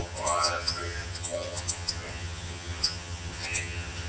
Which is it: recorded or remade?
remade